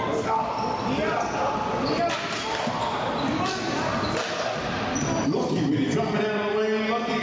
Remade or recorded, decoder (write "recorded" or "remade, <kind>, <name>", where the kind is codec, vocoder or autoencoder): recorded